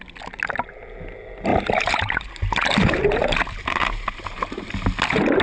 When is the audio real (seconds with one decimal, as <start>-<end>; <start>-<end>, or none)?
0.0-1.5; 4.7-5.4